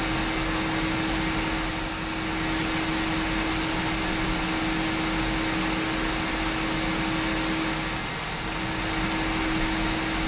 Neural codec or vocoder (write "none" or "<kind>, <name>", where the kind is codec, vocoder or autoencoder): none